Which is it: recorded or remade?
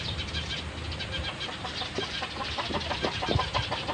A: remade